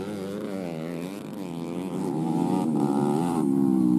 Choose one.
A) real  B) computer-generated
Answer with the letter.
A